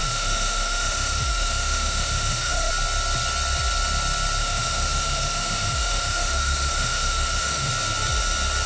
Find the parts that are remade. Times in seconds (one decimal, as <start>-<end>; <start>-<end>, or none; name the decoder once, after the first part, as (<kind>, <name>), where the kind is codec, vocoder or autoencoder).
0.0-2.7 (autoencoder, DAC-VAE); 4.4-7.7